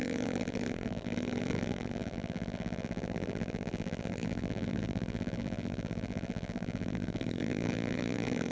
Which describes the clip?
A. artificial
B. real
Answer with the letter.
A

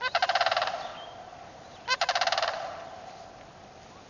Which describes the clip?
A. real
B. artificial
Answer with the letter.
A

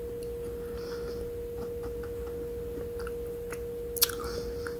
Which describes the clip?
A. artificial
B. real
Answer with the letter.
B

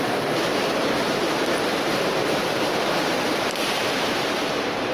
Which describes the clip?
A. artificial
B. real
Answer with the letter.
A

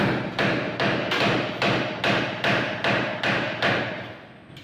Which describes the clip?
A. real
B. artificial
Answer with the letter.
A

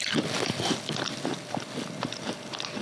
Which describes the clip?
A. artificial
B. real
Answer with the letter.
B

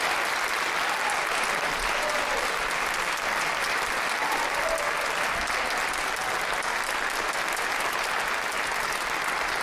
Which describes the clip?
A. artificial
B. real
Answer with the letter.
B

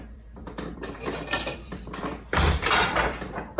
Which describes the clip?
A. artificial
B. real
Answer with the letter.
A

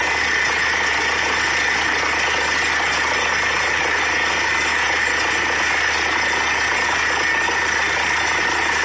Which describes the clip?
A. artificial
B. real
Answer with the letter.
B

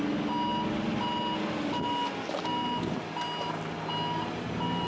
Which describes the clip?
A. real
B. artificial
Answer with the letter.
A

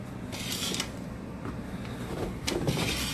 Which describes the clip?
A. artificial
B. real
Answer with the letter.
B